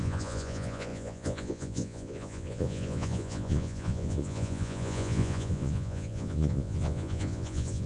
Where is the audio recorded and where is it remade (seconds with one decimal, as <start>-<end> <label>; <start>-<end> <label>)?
0.0-7.9 remade